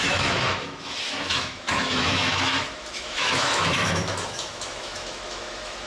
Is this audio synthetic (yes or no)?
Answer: yes